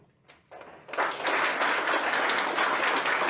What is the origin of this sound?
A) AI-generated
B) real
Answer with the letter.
B